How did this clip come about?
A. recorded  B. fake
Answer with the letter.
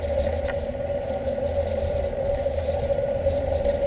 B